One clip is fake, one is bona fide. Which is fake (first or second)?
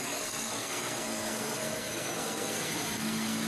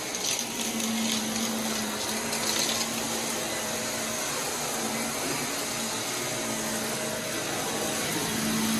first